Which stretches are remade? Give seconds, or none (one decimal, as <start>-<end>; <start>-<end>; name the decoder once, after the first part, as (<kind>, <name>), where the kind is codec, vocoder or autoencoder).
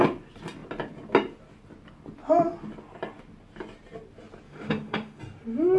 4.5-5.2 (autoencoder, DAC-VAE)